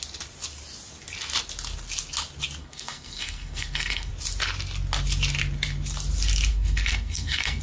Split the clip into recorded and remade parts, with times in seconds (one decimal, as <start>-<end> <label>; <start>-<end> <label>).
0.0-2.6 recorded; 2.6-4.1 remade; 4.1-6.5 recorded; 6.5-7.6 remade